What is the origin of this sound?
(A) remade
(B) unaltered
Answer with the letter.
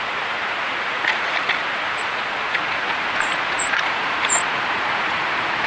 A